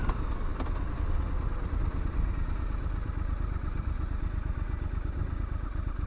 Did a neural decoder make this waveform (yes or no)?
no